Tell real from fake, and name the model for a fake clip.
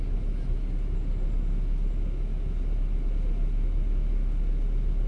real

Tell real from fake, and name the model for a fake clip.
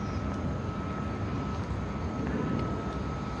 real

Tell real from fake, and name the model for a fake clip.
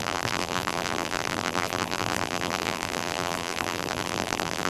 fake, vocoder, BigVGAN v2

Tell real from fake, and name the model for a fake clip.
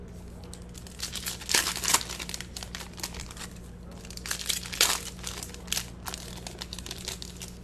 real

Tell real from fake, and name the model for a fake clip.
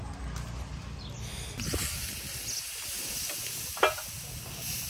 real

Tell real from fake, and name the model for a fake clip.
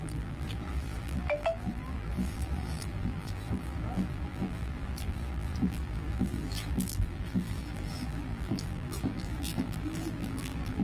fake, vocoder, BigVGAN v2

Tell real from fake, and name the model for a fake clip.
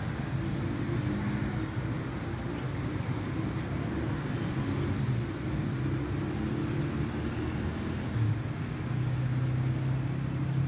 real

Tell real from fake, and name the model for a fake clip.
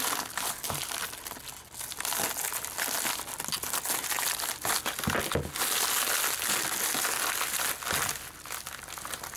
real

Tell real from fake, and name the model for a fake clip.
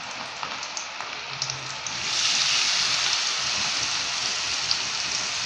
real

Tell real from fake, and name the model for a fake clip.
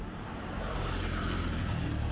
fake, vocoder, BigVGAN v2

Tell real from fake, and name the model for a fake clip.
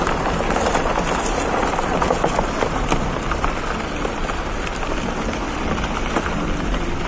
fake, vocoder, BigVGAN v2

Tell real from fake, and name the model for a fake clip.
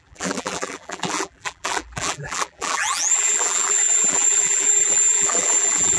fake, vocoder, BigVGAN v2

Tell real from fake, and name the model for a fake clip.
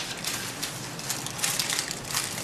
fake, vocoder, BigVGAN v2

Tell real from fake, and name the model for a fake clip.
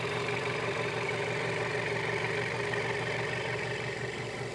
fake, vocoder, BigVGAN v2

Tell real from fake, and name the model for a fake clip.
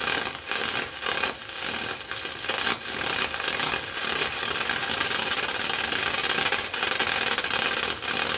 real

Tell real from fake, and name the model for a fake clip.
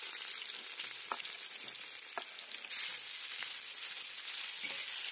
real